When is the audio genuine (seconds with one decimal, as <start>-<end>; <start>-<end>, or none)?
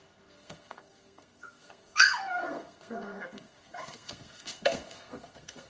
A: none